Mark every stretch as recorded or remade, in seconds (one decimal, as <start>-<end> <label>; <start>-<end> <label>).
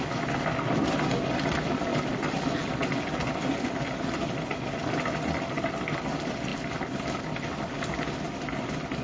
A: 0.0-9.0 recorded